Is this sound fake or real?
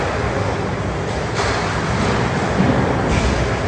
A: real